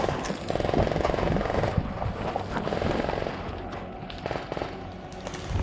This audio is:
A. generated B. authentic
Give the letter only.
B